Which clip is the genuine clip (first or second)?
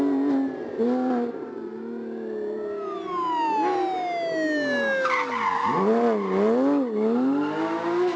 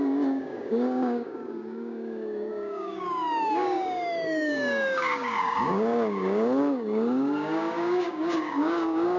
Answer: first